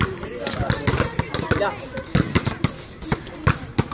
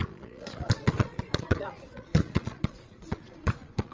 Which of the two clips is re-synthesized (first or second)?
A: second